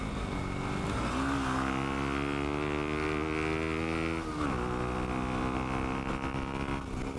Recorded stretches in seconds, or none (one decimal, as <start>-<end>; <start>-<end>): 0.0-7.2